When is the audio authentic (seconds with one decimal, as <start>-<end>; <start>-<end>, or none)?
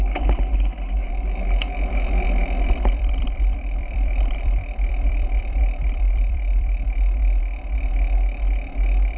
0.0-2.4; 7.4-9.2